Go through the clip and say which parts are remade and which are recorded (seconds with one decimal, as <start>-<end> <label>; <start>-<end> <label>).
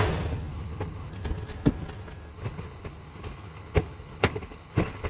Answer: 0.0-0.5 recorded; 0.5-1.1 remade; 1.1-2.3 recorded; 2.3-5.1 remade